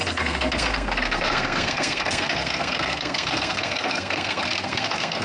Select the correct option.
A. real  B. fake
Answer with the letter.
B